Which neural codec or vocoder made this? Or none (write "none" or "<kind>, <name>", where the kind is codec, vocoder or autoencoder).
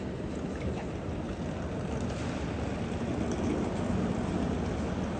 none